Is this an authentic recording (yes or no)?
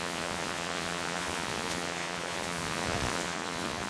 no